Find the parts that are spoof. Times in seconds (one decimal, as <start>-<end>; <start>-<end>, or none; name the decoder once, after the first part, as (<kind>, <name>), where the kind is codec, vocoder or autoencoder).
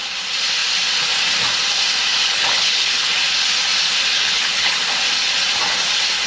2.2-3.1 (codec, HILCodec); 4.1-4.7